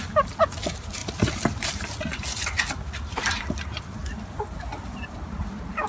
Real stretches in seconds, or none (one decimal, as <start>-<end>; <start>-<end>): 0.0-5.9